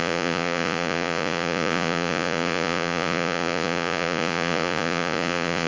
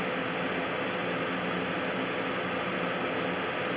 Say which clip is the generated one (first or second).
first